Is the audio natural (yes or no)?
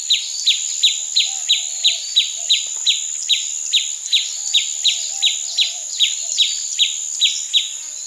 yes